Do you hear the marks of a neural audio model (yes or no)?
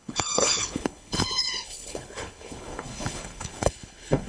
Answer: yes